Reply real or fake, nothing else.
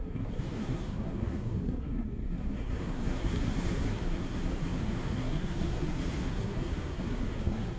fake